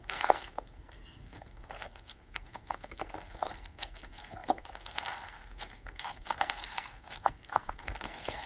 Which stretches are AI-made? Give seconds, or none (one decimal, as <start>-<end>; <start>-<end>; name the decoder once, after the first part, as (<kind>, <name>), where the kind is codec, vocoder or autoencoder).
0.0-8.5 (codec, SNAC)